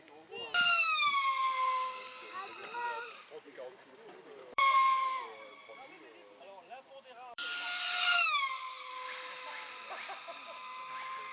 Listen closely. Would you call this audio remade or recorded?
remade